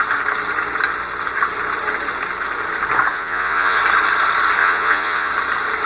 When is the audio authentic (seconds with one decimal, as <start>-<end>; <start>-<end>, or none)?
0.0-3.1; 3.8-4.6; 5.3-5.9